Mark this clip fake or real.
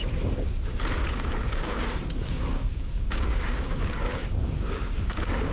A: fake